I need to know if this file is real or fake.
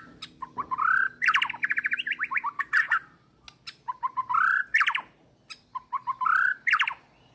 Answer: real